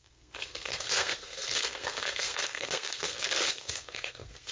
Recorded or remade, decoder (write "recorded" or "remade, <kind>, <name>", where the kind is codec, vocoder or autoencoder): remade, codec, SNAC